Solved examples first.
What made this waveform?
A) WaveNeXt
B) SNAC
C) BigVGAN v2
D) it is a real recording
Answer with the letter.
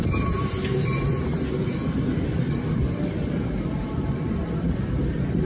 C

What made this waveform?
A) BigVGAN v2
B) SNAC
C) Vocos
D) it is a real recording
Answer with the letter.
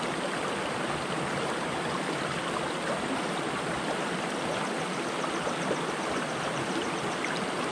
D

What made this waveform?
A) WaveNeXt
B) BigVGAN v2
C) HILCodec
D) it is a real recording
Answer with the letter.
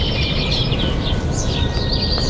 D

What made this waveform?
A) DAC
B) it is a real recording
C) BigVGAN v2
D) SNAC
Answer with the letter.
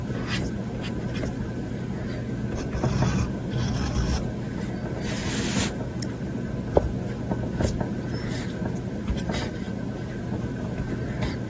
B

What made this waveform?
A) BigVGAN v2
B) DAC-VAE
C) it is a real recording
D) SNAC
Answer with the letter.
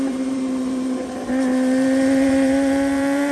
A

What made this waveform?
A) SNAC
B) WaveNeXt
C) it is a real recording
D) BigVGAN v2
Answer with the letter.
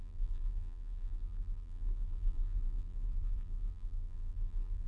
D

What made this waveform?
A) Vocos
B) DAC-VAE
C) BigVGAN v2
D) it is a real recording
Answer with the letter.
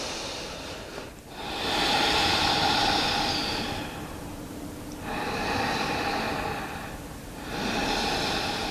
D